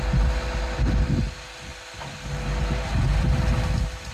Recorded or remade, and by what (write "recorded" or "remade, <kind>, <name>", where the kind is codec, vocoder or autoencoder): recorded